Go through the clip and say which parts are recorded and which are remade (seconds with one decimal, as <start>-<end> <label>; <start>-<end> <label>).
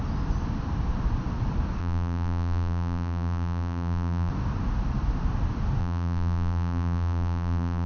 0.0-1.8 recorded; 1.8-4.3 remade; 4.3-5.8 recorded; 5.8-7.9 remade